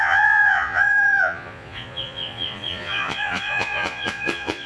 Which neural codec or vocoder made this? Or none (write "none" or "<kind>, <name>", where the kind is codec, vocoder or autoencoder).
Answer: vocoder, Vocos